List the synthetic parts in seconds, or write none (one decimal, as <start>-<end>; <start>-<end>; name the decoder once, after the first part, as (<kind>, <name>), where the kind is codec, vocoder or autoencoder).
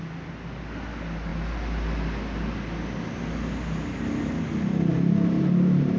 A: none